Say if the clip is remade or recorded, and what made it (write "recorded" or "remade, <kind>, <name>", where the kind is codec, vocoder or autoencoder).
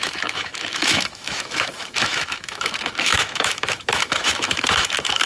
remade, autoencoder, DAC-VAE